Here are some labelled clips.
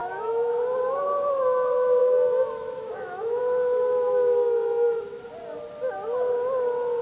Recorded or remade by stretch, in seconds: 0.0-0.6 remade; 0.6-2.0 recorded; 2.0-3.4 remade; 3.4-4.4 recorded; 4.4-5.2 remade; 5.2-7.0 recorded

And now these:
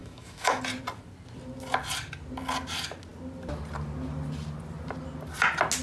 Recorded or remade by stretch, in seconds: 0.0-0.6 remade; 0.6-5.8 recorded

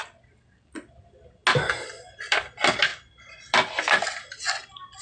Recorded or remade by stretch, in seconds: 0.0-5.0 recorded

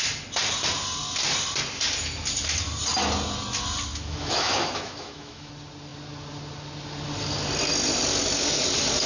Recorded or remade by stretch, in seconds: 0.0-3.9 recorded; 3.9-5.5 remade; 5.5-9.1 recorded

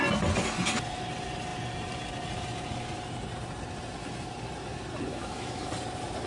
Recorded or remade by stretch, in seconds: 0.0-5.1 recorded; 5.1-5.7 remade; 5.7-6.3 recorded

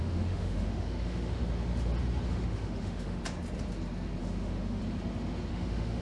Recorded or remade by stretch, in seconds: 0.0-1.4 remade; 1.4-2.3 recorded; 2.3-3.2 remade; 3.2-4.2 recorded; 4.2-4.8 remade; 4.8-5.5 recorded; 5.5-6.0 remade

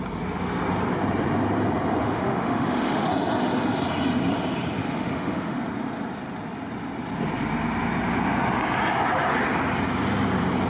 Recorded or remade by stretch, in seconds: 0.0-2.0 recorded; 2.0-3.1 remade; 3.1-4.8 recorded; 4.8-5.6 remade; 5.6-10.7 recorded